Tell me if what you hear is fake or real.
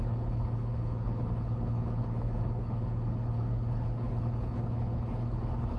fake